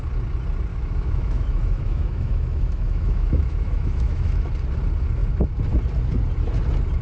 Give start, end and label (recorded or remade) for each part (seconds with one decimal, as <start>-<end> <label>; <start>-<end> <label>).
0.0-0.7 recorded; 0.7-4.5 remade; 4.5-7.0 recorded